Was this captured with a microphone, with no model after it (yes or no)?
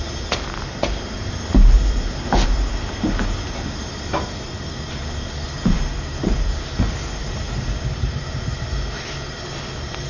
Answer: yes